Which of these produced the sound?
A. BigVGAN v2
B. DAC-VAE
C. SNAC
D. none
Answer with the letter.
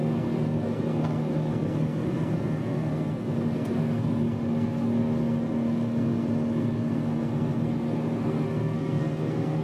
C